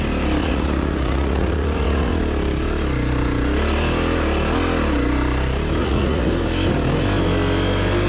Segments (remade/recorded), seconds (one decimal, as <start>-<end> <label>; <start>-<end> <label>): 0.0-0.4 recorded; 0.4-2.2 remade; 2.2-5.8 recorded; 5.8-6.3 remade; 6.3-8.1 recorded